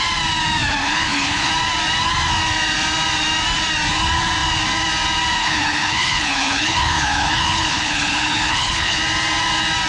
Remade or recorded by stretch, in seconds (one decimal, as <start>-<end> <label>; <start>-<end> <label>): 0.0-0.8 recorded; 0.8-1.5 remade; 1.5-5.4 recorded; 5.4-9.0 remade; 9.0-9.9 recorded